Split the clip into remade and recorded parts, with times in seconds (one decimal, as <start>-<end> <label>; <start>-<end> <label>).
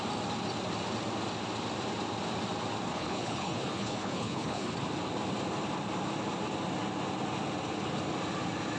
0.0-2.9 recorded; 2.9-4.7 remade; 4.7-8.8 recorded